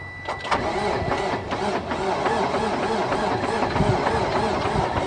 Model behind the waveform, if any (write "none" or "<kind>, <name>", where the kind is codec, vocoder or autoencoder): none